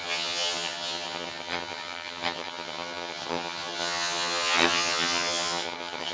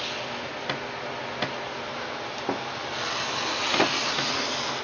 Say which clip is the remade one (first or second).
first